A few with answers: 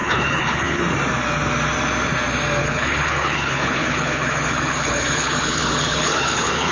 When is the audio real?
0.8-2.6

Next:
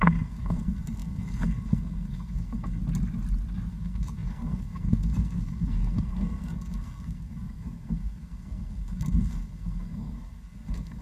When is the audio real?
2.8-3.7

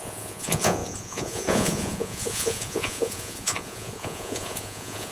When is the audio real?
none

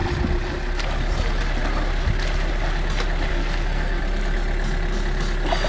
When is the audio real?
0.0-3.3; 4.0-5.7

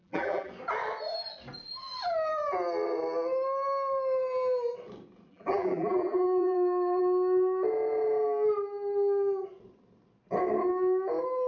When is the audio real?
0.5-5.3; 7.0-11.5